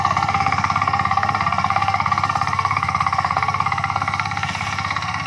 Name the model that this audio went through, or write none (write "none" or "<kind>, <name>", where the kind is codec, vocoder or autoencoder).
codec, SNAC